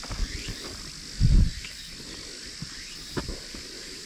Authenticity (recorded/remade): recorded